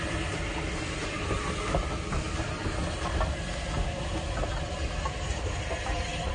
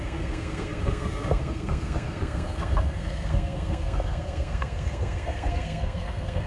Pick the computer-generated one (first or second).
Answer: second